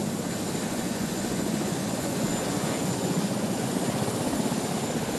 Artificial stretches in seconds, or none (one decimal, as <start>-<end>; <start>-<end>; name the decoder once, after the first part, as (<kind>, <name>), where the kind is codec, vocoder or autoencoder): 0.7-3.8 (vocoder, Vocos)